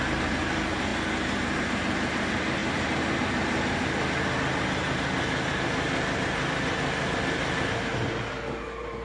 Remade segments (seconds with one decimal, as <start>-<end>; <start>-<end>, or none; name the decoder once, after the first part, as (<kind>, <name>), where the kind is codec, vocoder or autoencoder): none